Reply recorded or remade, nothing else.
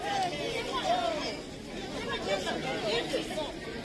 recorded